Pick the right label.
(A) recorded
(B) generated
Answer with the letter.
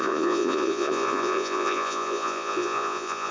B